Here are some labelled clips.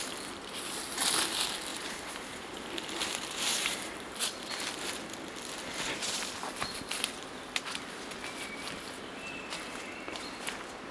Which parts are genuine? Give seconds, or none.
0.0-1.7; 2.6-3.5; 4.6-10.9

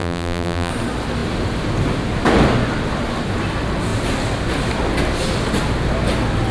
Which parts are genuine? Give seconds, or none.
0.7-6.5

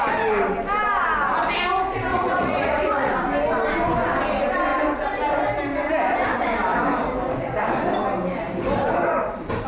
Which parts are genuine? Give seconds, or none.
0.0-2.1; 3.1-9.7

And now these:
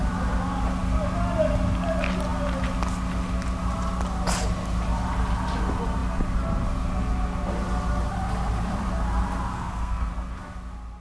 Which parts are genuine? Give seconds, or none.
0.0-9.5; 10.1-11.0